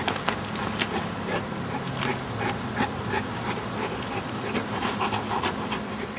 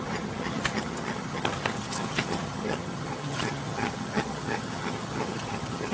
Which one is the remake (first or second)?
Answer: second